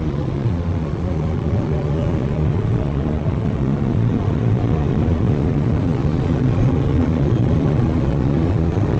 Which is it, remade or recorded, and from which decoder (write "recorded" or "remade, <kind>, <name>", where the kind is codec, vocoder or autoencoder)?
remade, vocoder, Vocos